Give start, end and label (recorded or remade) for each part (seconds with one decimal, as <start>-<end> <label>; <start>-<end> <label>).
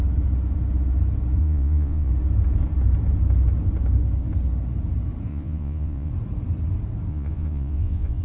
0.0-1.4 recorded; 1.4-2.1 remade; 2.1-5.3 recorded; 5.3-6.1 remade; 6.1-7.1 recorded; 7.1-8.2 remade